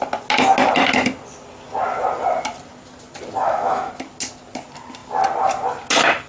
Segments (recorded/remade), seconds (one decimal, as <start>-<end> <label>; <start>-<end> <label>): 0.0-3.4 recorded; 3.4-3.9 remade; 3.9-6.3 recorded